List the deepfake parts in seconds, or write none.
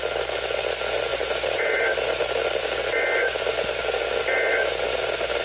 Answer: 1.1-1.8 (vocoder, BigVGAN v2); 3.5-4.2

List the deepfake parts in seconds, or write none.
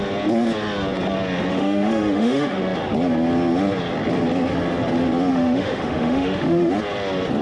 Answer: 1.5-2.6 (autoencoder, DAC-VAE); 5.3-6.7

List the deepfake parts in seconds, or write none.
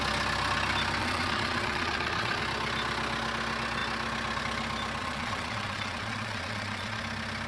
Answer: 1.0-2.4 (vocoder, Vocos); 5.0-7.0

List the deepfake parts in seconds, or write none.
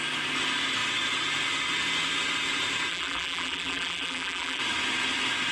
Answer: 2.9-4.6 (vocoder, BigVGAN v2)